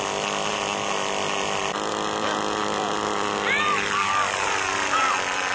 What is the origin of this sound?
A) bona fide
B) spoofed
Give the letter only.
A